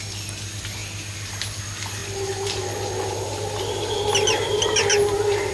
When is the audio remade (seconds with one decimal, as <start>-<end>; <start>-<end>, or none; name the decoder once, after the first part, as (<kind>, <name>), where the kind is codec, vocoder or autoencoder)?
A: 0.8-1.6 (vocoder, BigVGAN v2)